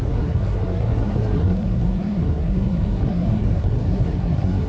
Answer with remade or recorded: remade